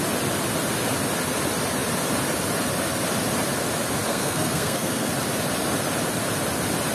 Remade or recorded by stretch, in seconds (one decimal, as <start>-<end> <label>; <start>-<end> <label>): 0.0-4.1 recorded; 4.1-5.1 remade; 5.1-6.9 recorded